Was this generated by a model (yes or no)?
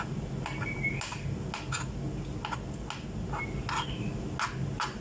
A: no